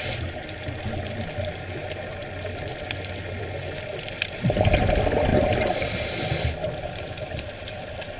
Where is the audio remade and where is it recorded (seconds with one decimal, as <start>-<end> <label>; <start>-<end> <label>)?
0.0-8.2 recorded